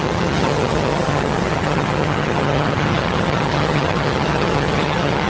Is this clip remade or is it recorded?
remade